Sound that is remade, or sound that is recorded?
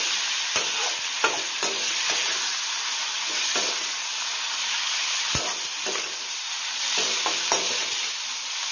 recorded